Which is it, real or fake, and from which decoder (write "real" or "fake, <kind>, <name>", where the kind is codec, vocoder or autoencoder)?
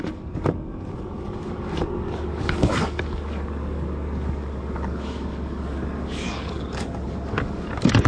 fake, codec, DAC